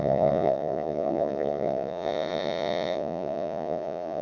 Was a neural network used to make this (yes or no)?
yes